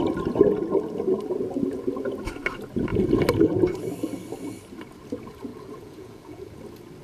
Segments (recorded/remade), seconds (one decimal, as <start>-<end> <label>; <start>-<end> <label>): 0.0-5.5 recorded; 5.5-6.6 remade; 6.6-7.0 recorded